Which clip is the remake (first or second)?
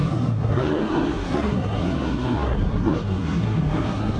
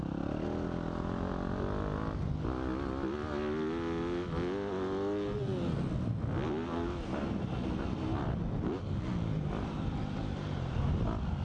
first